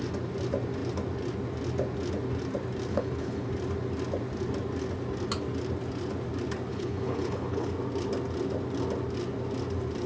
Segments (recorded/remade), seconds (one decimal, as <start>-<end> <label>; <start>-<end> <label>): 0.0-2.9 recorded; 2.9-3.5 remade; 3.5-6.7 recorded; 6.7-7.7 remade; 7.7-10.1 recorded

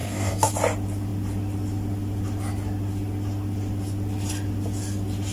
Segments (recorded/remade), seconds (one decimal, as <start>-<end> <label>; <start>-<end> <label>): 0.0-0.5 remade; 0.5-5.3 recorded

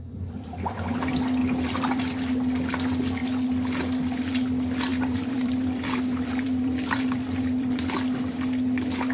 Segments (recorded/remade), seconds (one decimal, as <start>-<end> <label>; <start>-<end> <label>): 0.0-1.4 recorded; 1.4-2.3 remade; 2.3-4.9 recorded; 4.9-7.9 remade; 7.9-9.1 recorded